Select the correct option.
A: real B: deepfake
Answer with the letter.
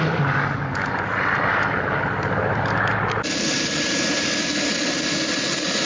A